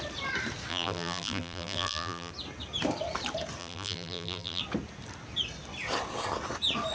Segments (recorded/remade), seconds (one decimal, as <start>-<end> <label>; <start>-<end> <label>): 0.0-0.7 recorded; 0.7-2.3 remade; 2.3-3.6 recorded; 3.6-4.6 remade; 4.6-6.9 recorded